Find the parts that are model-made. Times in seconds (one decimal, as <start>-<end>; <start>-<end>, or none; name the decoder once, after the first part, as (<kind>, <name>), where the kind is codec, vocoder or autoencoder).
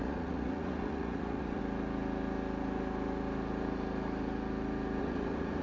0.0-1.6 (vocoder, Vocos); 5.0-5.6